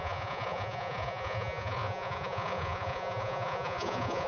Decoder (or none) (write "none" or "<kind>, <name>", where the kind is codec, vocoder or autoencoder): vocoder, Vocos